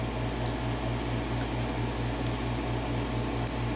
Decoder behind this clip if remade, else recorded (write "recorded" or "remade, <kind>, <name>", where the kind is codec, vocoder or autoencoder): recorded